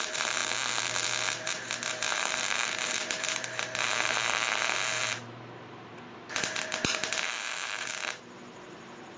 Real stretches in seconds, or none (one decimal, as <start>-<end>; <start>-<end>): 0.4-1.9